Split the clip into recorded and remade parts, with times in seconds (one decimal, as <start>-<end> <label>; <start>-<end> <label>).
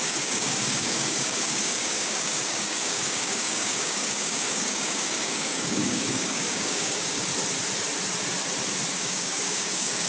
0.0-7.3 remade; 7.3-8.9 recorded; 8.9-10.1 remade